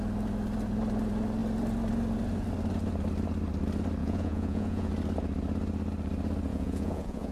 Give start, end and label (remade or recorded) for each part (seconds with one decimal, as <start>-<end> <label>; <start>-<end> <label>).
0.0-4.0 recorded; 4.0-4.9 remade; 4.9-6.5 recorded; 6.5-7.3 remade